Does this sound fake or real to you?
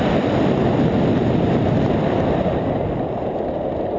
real